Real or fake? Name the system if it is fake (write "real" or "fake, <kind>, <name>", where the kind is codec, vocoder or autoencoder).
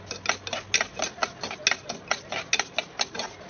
real